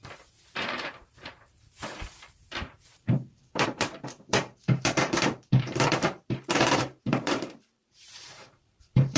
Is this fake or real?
fake